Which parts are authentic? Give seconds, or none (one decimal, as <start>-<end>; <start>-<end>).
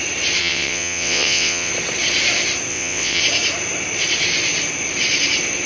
0.0-0.4; 1.7-2.7; 3.2-5.7